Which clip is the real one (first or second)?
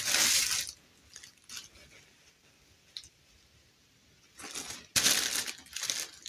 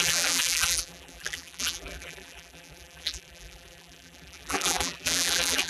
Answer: first